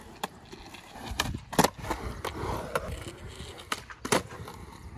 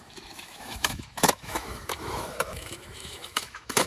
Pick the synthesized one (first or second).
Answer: second